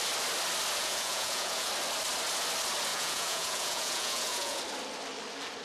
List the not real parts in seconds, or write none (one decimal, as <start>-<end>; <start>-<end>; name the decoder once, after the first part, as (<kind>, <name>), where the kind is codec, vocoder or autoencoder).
0.8-1.7 (vocoder, Vocos); 2.9-4.6